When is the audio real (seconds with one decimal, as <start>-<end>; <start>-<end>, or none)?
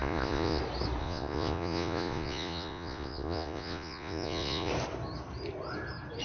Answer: 0.6-1.0; 4.7-6.2